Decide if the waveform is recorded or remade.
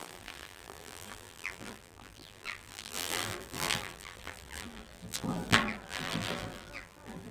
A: remade